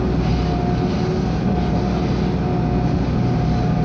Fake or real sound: real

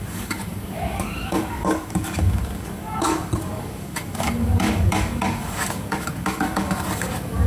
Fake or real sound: fake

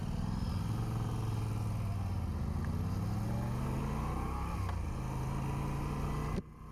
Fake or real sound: real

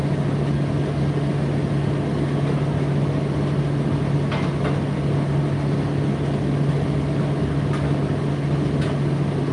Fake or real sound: real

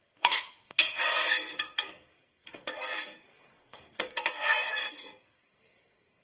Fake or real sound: fake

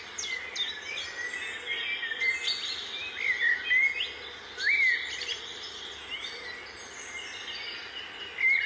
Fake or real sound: real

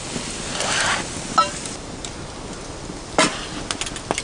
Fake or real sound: real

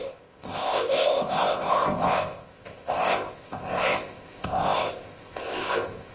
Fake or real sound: fake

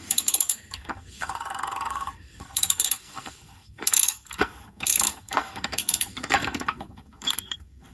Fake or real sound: fake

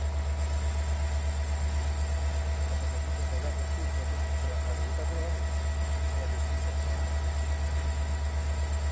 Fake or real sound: real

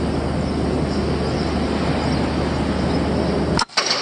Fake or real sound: real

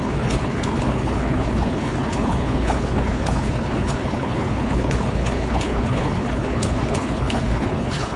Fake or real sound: fake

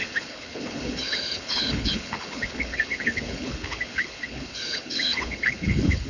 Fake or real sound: fake